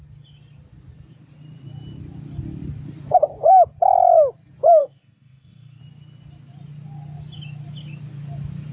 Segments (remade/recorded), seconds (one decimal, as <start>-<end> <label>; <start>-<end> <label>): 0.0-4.8 recorded; 4.8-5.8 remade; 5.8-8.7 recorded